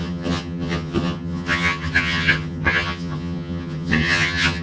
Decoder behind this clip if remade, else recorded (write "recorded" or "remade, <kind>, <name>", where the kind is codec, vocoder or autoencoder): remade, vocoder, HiFi-GAN